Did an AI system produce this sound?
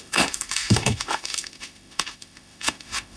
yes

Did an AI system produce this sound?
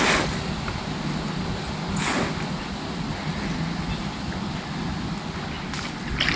no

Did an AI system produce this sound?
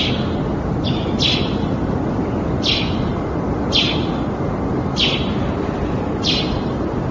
no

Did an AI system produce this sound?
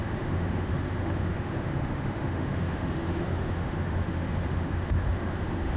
yes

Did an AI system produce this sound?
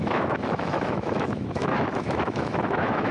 yes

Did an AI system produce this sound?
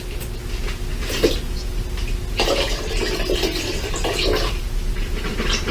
no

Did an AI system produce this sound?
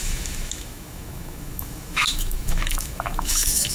yes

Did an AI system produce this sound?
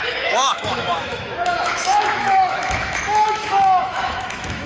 yes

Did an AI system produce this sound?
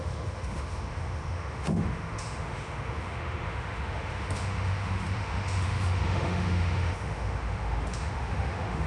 yes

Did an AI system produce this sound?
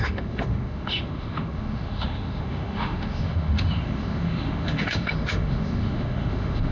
yes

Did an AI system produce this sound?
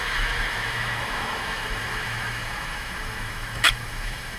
yes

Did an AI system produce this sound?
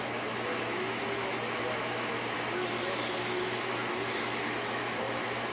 yes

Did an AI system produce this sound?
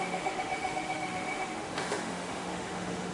yes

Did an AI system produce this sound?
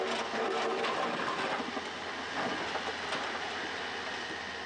no